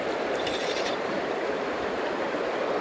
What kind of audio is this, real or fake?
fake